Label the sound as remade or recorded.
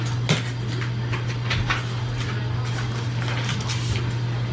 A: recorded